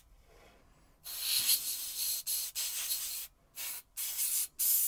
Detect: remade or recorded recorded